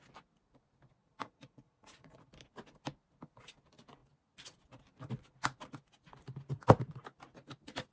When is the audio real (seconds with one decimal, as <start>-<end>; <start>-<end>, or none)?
0.0-1.0; 2.3-7.9